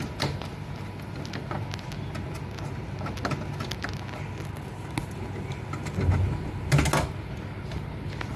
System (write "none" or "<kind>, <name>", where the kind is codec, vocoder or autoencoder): none